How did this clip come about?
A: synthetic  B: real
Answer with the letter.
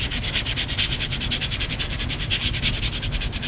B